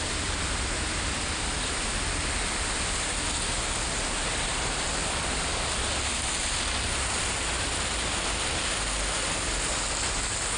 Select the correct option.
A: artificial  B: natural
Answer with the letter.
B